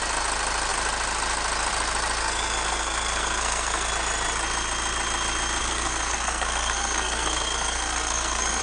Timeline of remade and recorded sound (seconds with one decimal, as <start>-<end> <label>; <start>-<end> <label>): 0.0-2.2 recorded; 2.2-3.9 remade; 3.9-5.6 recorded; 5.6-8.6 remade